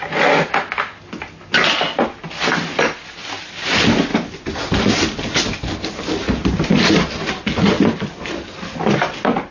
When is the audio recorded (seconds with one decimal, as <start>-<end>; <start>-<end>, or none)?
0.0-9.5